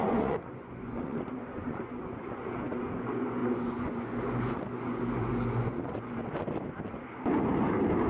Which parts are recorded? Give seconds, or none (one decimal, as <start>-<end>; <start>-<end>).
6.2-8.1